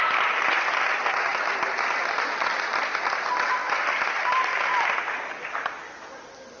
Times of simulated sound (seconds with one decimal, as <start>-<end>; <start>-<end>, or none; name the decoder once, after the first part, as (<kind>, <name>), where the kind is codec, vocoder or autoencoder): none